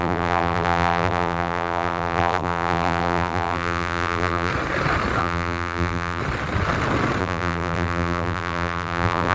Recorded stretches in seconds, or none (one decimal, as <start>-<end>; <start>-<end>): 4.5-5.2; 6.2-7.2